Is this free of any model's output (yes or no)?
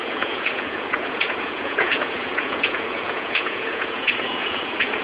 no